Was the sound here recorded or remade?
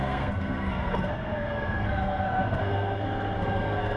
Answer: remade